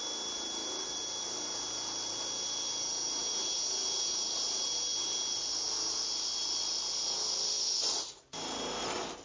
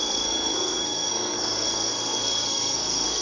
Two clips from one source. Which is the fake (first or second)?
second